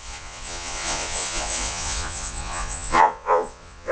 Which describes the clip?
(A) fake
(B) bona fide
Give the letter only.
A